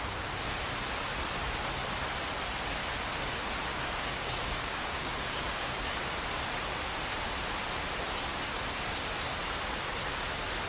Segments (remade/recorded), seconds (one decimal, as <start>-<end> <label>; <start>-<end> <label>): 0.0-3.7 recorded; 3.7-5.7 remade; 5.7-10.7 recorded